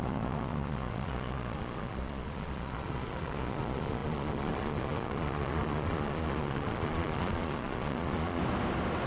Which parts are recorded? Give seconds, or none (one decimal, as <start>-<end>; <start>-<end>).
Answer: 8.4-9.1